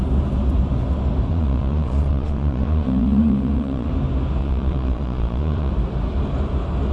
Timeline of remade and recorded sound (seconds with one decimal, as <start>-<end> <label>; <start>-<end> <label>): 0.0-1.3 recorded; 1.3-3.9 remade; 3.9-4.4 recorded; 4.4-5.7 remade; 5.7-6.9 recorded